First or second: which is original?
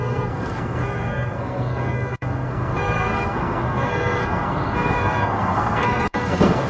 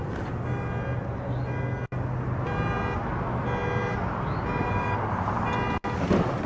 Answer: second